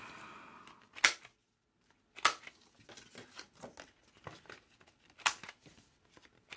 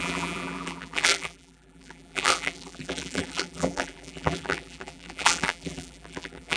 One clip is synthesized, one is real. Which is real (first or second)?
first